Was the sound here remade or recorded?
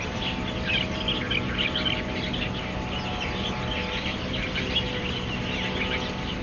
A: recorded